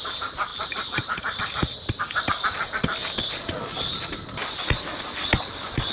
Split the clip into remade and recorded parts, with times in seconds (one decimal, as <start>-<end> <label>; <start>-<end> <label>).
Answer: 0.0-0.5 recorded; 0.5-2.3 remade; 2.3-5.9 recorded